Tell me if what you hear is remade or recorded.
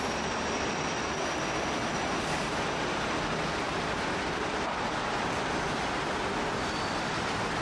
recorded